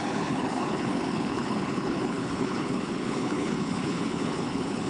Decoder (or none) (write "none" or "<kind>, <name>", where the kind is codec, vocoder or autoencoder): codec, HILCodec